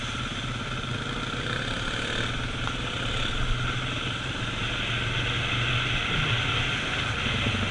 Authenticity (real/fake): real